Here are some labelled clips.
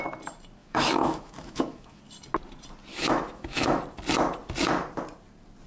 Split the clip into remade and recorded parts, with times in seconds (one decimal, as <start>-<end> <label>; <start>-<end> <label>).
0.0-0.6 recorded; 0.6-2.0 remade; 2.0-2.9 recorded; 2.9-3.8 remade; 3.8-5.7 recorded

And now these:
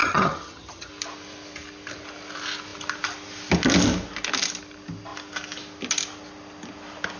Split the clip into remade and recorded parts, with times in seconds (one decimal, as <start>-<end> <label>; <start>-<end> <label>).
0.0-0.9 remade; 0.9-7.2 recorded

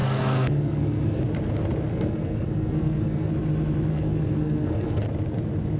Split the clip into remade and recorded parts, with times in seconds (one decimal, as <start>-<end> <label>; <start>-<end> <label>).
0.0-1.2 remade; 1.2-1.9 recorded; 1.9-3.3 remade; 3.3-3.9 recorded; 3.9-5.0 remade; 5.0-5.8 recorded

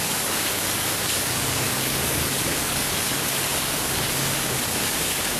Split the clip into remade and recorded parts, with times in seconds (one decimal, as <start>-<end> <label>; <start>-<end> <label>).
0.0-5.4 remade

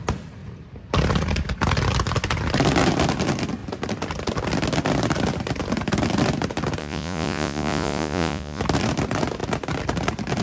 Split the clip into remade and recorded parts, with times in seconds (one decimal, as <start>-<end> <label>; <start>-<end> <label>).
0.0-6.8 recorded; 6.8-8.6 remade; 8.6-10.4 recorded